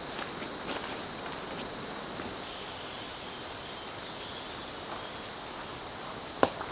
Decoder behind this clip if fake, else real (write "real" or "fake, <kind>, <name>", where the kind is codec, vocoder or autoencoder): real